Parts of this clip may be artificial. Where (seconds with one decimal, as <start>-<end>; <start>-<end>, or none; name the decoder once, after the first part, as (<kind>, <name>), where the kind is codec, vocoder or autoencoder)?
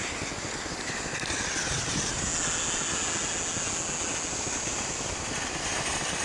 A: 0.0-2.3 (vocoder, BigVGAN v2); 4.3-6.2